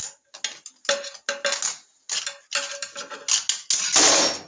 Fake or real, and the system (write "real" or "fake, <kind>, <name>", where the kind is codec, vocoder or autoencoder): real